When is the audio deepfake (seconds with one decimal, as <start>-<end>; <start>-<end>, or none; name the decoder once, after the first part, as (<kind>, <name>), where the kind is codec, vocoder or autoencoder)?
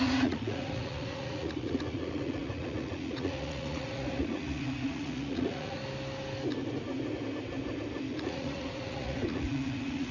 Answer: 0.0-5.8 (vocoder, Vocos); 8.1-10.1